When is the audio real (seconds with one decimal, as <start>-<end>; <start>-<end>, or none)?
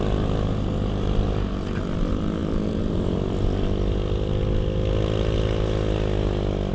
0.0-6.7